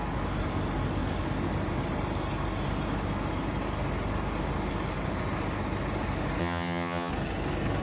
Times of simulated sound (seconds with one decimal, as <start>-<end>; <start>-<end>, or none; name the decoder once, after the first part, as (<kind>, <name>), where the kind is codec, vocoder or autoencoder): 6.4-7.1 (vocoder, HiFi-GAN)